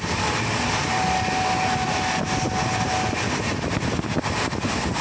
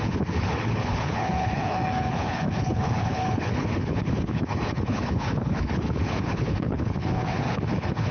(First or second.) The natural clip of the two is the first